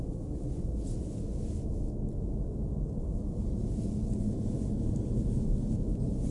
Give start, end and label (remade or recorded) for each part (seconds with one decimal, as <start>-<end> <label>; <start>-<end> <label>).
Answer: 0.0-3.1 recorded; 3.1-3.9 remade; 3.9-6.3 recorded